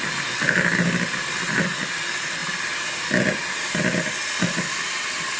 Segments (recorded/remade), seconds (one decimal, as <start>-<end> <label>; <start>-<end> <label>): 0.0-5.4 recorded